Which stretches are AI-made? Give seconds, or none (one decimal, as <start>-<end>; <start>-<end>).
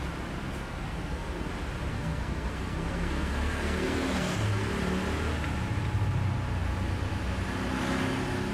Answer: 0.5-1.5; 1.9-4.7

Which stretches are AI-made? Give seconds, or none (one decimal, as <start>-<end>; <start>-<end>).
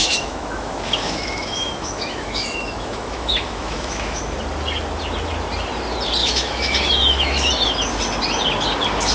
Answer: 0.0-4.2; 6.2-7.5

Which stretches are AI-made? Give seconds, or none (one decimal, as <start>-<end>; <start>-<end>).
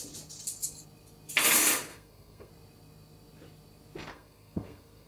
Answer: 1.9-2.5; 4.1-5.1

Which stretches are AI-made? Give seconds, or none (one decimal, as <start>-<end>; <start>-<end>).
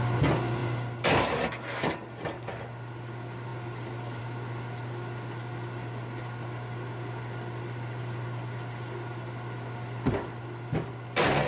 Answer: none